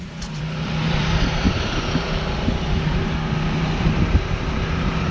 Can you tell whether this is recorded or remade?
remade